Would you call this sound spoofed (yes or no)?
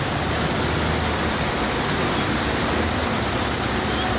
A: no